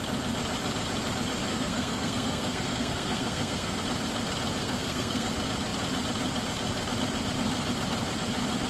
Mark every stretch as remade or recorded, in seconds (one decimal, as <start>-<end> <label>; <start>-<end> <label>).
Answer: 0.0-1.5 recorded; 1.5-3.8 remade; 3.8-4.6 recorded; 4.6-5.3 remade; 5.3-8.7 recorded